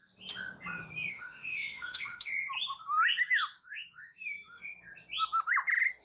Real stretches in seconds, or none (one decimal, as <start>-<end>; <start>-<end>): 0.0-1.1; 2.3-3.6; 4.6-6.0